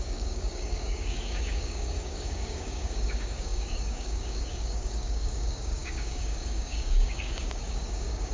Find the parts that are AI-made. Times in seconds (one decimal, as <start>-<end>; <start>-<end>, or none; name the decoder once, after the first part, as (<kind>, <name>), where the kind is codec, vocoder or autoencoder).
0.0-8.3 (codec, DAC)

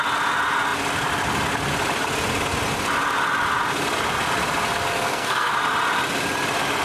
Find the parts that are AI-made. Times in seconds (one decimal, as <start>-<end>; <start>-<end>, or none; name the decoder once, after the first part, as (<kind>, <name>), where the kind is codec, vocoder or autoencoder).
4.9-5.5 (codec, SNAC)

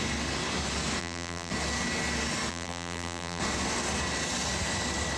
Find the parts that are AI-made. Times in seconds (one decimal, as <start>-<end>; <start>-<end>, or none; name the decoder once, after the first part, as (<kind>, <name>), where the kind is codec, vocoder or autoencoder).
1.0-1.5 (vocoder, BigVGAN v2); 2.5-3.4

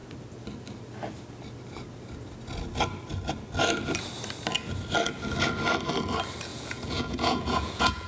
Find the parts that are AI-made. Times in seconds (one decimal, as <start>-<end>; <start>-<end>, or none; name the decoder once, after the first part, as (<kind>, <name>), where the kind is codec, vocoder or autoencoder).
6.5-8.1 (vocoder, Vocos)

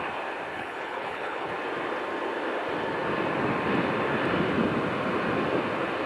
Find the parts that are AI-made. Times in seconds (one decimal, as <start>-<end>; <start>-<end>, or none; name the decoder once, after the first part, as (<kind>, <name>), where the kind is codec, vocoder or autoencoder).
0.5-1.5 (codec, HILCodec)